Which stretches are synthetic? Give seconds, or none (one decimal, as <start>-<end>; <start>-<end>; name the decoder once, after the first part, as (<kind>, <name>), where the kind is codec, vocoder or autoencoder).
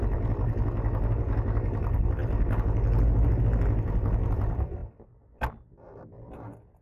none